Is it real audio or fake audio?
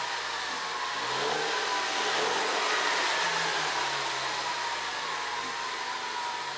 real